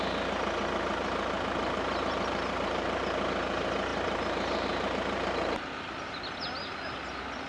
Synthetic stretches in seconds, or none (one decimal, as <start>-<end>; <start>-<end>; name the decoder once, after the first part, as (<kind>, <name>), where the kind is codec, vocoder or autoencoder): 1.6-3.0 (vocoder, BigVGAN v2); 3.9-5.9